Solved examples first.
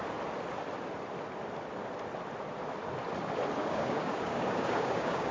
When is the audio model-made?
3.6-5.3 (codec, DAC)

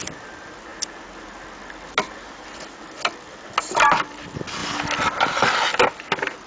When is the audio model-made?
none

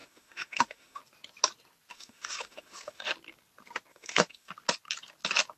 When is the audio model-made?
0.0-1.0 (autoencoder, DAC-VAE); 1.9-3.1; 3.9-4.5